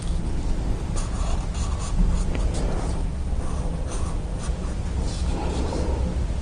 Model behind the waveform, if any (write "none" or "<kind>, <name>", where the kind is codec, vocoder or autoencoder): none